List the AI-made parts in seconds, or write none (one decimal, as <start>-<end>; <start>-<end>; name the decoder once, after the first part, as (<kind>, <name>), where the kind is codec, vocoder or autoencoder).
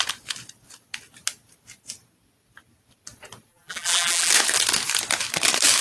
3.5-4.3 (vocoder, BigVGAN v2)